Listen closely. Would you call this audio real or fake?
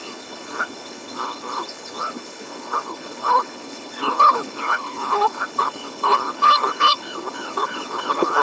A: fake